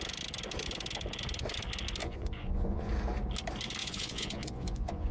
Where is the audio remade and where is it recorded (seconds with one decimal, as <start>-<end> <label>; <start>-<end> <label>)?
0.0-2.0 recorded; 2.0-2.9 remade; 2.9-3.8 recorded; 3.8-5.1 remade